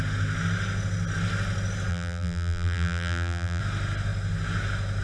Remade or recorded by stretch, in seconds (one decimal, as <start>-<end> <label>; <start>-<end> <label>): 0.0-1.9 recorded; 1.9-3.6 remade; 3.6-5.0 recorded